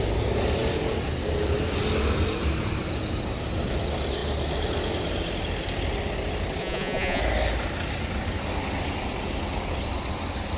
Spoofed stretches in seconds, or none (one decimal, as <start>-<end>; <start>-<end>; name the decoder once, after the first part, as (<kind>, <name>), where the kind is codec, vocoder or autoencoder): 6.6-7.2 (vocoder, Vocos)

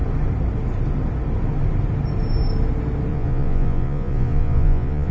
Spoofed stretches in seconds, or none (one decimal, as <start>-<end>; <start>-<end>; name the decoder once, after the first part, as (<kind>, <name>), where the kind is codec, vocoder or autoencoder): 3.1-5.1 (vocoder, Vocos)

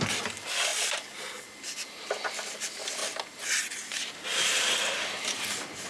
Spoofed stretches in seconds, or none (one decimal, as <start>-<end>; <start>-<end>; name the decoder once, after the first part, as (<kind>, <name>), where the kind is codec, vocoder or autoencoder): none